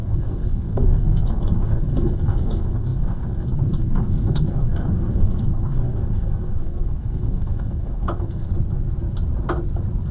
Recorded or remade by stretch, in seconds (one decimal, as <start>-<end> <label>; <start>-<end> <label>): 0.0-8.5 remade; 8.5-10.1 recorded